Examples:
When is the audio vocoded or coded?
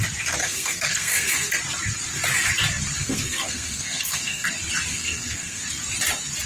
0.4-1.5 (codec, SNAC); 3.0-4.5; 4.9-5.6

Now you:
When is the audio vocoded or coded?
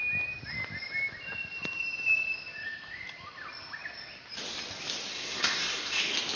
5.1-6.0 (codec, SNAC)